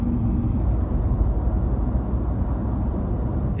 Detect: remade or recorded recorded